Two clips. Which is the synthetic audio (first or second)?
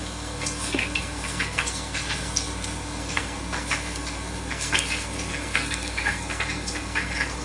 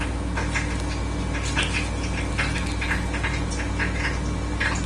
first